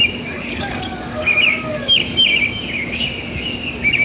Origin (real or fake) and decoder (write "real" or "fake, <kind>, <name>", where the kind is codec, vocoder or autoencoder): fake, codec, DAC